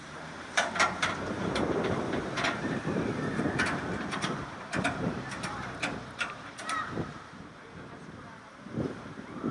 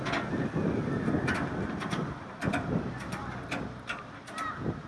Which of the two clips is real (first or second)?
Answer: second